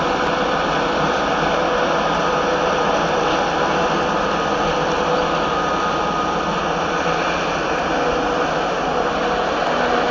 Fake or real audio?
real